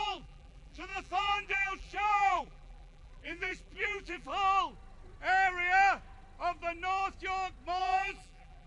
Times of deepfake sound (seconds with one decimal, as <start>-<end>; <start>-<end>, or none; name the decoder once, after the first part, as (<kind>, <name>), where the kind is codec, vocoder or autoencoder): 0.0-4.3 (vocoder, BigVGAN v2); 7.8-8.7